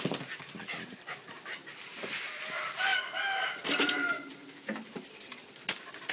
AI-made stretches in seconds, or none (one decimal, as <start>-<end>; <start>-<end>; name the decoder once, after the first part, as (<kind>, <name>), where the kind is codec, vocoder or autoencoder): none